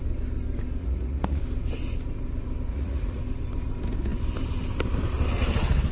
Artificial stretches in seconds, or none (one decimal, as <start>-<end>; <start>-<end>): 0.8-1.4; 2.7-3.2